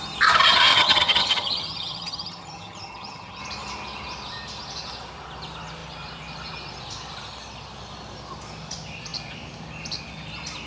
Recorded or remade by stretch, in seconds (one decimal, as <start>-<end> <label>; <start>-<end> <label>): 0.0-0.7 recorded; 0.7-3.4 remade; 3.4-10.7 recorded